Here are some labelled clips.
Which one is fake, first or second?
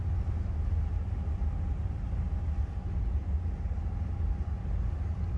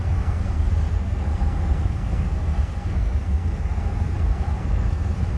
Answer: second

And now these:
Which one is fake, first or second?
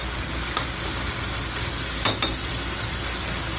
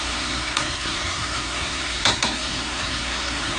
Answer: second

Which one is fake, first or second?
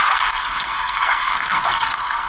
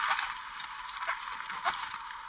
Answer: first